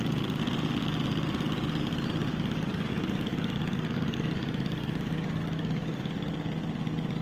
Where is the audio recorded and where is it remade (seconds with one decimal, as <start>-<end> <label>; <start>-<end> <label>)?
0.0-2.3 recorded; 2.3-6.1 remade; 6.1-7.2 recorded

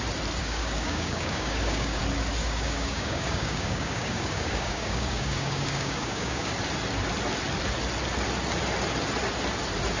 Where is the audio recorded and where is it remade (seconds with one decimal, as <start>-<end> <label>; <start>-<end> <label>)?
0.0-0.4 recorded; 0.4-2.0 remade; 2.0-2.4 recorded; 2.4-6.5 remade; 6.5-10.0 recorded

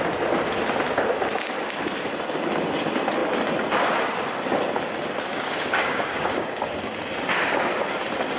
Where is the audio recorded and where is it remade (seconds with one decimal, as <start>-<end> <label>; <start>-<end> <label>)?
0.0-5.3 recorded; 5.3-6.7 remade; 6.7-8.4 recorded